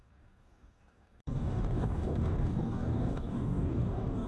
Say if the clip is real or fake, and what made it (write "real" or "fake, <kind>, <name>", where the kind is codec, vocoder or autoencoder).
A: fake, codec, DAC